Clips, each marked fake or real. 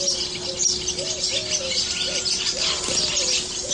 real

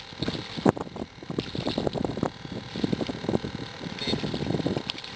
real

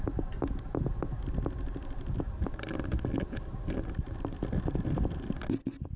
real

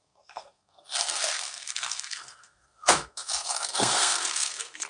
fake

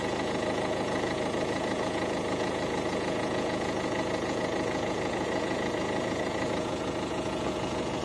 fake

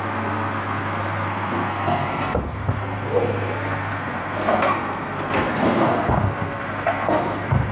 fake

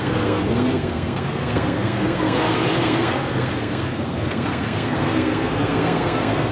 fake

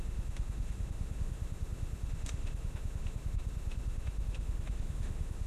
fake